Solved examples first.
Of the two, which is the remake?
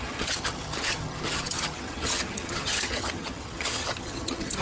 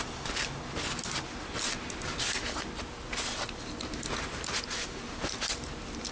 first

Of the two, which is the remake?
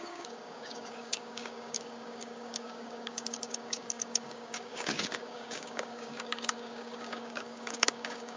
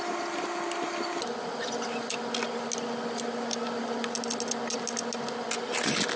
first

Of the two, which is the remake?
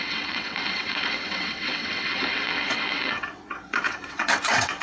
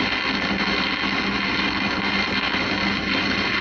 first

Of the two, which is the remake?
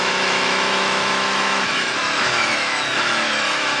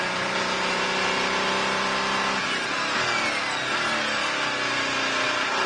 first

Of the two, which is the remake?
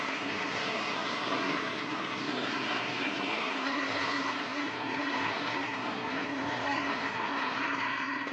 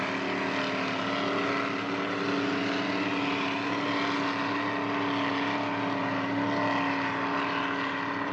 first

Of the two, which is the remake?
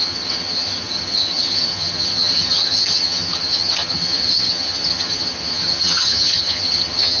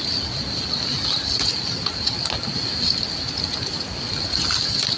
first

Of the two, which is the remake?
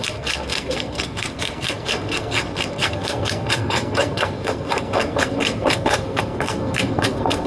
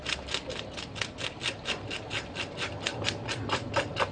first